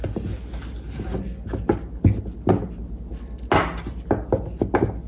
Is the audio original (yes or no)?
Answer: yes